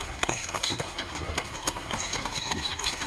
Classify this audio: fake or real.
fake